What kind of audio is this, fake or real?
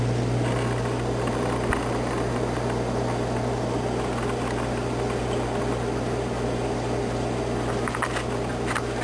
real